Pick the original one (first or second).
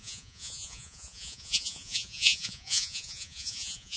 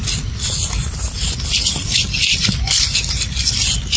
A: second